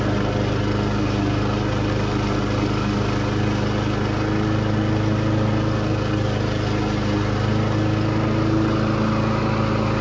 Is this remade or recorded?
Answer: recorded